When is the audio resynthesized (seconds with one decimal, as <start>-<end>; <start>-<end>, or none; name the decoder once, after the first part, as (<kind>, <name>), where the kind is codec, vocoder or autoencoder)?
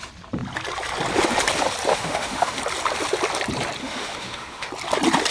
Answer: 1.9-2.6 (autoencoder, DAC-VAE); 3.8-4.7